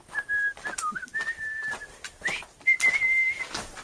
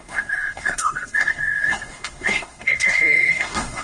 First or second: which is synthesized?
second